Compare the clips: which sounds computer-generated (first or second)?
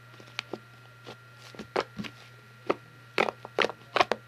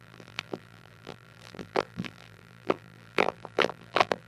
second